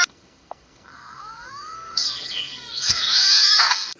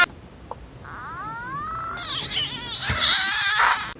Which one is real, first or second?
second